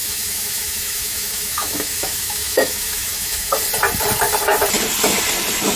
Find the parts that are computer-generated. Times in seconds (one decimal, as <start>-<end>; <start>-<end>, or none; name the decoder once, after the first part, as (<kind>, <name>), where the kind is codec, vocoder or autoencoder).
0.0-3.5 (autoencoder, DAC-VAE)